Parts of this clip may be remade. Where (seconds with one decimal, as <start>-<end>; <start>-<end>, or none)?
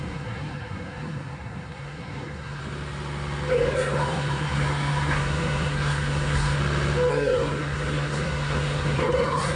0.0-2.6; 3.5-6.6; 7.1-9.6